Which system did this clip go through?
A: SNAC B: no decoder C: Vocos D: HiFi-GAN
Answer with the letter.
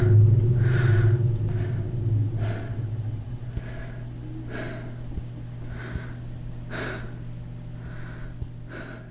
B